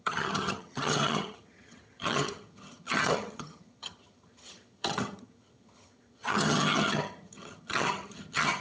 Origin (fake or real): fake